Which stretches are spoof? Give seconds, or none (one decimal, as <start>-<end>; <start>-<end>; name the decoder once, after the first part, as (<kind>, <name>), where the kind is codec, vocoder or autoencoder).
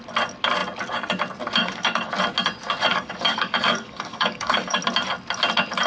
1.6-2.1 (codec, DAC); 2.9-4.8